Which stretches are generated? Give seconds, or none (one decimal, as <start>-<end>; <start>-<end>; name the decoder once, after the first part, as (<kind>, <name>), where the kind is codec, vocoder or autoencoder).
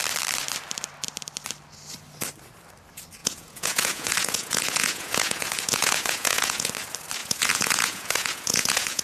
3.2-6.7 (vocoder, Vocos); 7.2-9.0